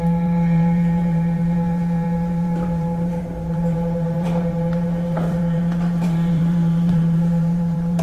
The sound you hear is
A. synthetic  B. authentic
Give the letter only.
A